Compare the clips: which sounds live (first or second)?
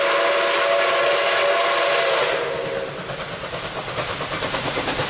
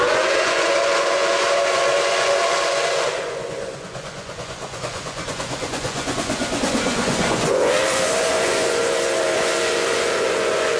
first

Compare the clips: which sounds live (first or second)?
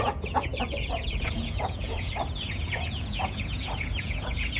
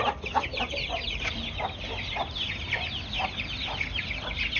second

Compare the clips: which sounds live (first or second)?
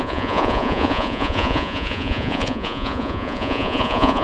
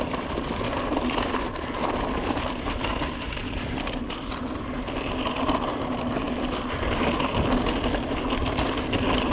second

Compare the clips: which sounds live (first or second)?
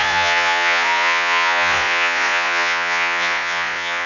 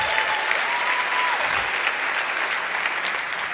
second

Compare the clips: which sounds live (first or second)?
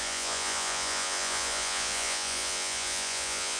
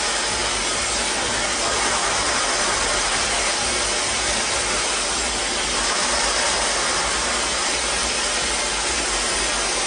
second